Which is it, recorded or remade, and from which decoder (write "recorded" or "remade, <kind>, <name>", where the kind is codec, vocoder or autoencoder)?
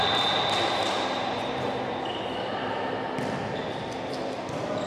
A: recorded